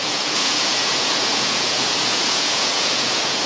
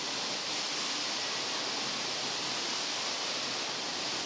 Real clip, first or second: second